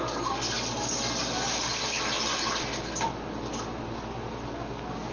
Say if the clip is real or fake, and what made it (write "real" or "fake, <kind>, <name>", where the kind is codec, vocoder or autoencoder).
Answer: real